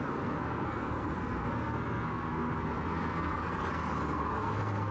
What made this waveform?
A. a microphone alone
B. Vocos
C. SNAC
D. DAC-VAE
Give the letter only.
C